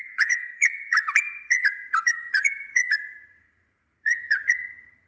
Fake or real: fake